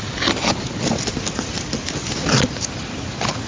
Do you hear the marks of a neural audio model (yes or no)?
no